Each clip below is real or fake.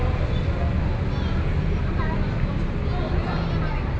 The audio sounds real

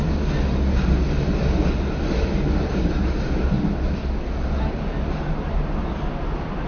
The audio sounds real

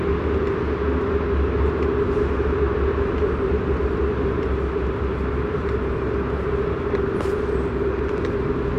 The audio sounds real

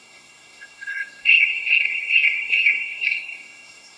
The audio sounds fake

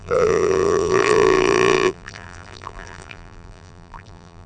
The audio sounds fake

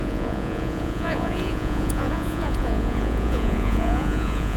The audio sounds fake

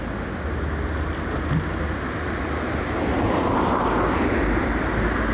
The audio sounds real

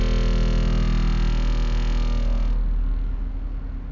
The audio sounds real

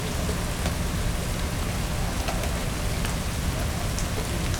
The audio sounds real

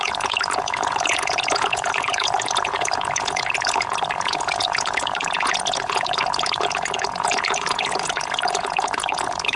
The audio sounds fake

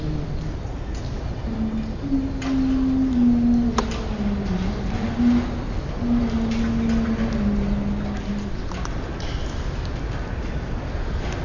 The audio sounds real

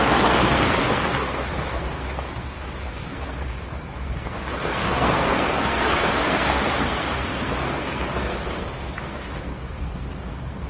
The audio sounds fake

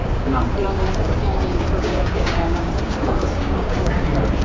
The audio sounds fake